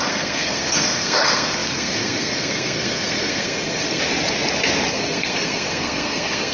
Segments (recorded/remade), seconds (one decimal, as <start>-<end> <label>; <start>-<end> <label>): 0.0-4.0 remade; 4.0-4.9 recorded; 4.9-6.5 remade